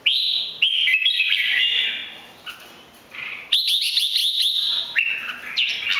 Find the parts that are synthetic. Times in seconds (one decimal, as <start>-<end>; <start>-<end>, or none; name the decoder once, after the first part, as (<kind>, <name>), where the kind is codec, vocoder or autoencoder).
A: 0.9-1.6 (vocoder, BigVGAN v2); 2.0-3.5